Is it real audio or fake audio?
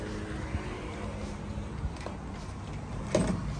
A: real